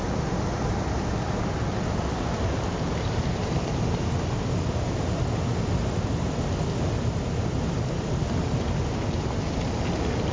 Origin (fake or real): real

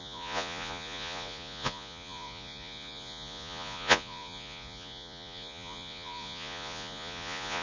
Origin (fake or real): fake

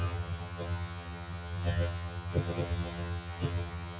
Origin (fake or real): fake